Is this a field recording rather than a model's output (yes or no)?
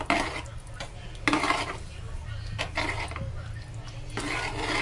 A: yes